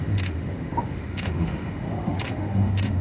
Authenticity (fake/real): fake